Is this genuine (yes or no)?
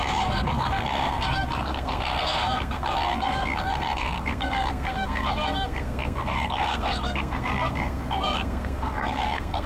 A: no